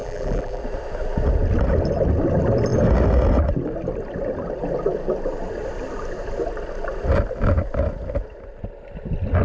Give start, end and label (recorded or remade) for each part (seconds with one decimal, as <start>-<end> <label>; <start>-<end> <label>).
0.0-0.6 remade; 0.6-9.4 recorded